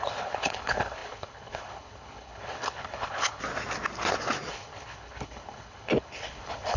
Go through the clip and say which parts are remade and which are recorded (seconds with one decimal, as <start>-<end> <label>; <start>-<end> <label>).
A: 0.0-3.4 remade; 3.4-4.5 recorded; 4.5-6.8 remade